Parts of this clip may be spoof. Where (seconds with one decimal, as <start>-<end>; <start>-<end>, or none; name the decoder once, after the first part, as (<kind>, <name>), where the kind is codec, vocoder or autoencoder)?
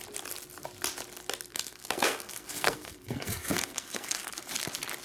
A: 1.5-4.5 (codec, SNAC)